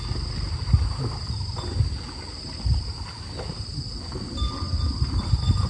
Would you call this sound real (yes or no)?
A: yes